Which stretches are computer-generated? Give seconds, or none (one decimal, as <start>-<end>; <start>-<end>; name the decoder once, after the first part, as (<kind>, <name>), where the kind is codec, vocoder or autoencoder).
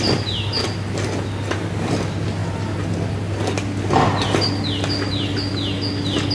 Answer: none